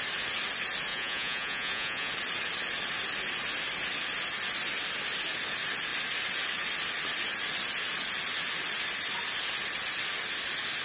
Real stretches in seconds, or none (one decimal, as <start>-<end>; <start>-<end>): 0.0-0.9; 2.1-10.8